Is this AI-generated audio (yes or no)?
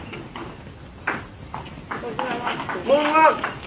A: no